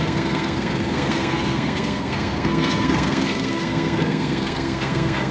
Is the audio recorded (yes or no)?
no